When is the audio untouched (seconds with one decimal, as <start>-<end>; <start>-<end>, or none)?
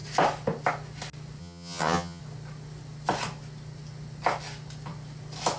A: 0.0-1.4; 2.2-5.6